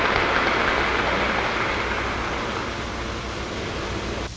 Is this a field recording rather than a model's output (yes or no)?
yes